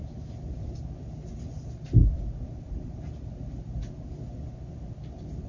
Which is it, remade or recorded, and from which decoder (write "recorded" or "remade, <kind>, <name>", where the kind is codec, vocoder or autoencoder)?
recorded